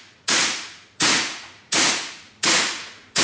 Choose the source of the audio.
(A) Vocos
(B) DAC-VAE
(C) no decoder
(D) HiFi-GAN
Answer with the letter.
A